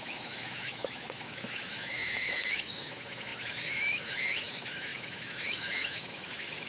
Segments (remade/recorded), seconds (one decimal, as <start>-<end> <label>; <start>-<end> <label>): 0.0-6.7 remade